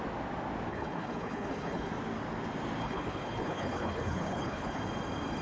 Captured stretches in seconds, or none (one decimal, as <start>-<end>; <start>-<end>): 0.0-0.7; 1.9-2.8; 4.8-5.4